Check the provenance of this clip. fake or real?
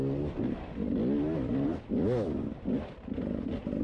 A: real